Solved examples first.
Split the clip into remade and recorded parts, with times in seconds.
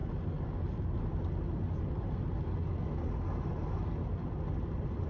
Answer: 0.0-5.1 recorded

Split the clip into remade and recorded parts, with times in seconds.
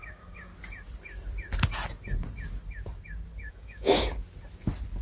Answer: 0.0-0.5 remade; 0.5-3.5 recorded; 3.5-4.1 remade; 4.1-5.0 recorded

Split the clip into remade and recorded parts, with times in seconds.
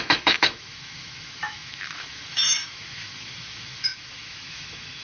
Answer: 0.0-5.0 remade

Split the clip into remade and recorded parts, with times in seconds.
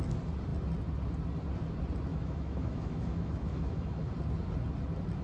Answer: 0.0-2.1 recorded; 2.1-4.1 remade; 4.1-5.2 recorded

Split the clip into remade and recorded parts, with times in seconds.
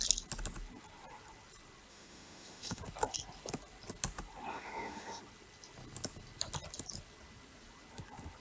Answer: 0.0-1.9 recorded; 1.9-2.8 remade; 2.8-4.5 recorded; 4.5-5.2 remade; 5.2-8.4 recorded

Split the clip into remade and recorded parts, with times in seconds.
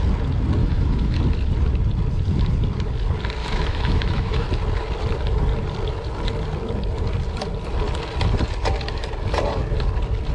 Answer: 0.0-0.6 recorded; 0.6-1.2 remade; 1.2-3.4 recorded; 3.4-4.5 remade; 4.5-10.3 recorded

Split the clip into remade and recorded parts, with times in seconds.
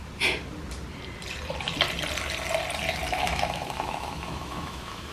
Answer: 0.0-3.1 recorded; 3.1-5.1 remade